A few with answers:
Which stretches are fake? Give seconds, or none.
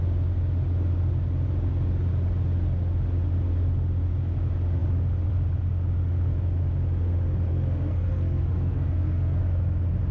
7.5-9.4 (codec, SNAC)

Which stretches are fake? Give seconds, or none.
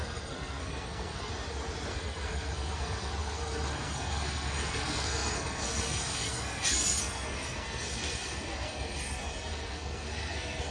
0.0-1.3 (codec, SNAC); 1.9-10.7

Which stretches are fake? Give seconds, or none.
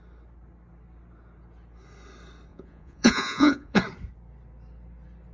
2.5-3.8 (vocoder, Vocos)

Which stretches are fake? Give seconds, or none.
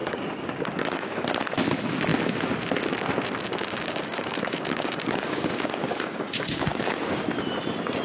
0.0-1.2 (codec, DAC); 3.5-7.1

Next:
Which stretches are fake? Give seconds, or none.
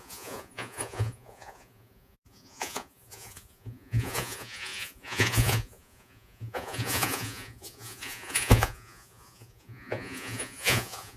0.0-11.2 (vocoder, Vocos)